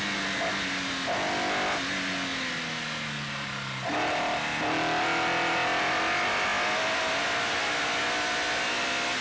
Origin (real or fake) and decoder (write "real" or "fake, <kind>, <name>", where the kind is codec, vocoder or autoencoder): real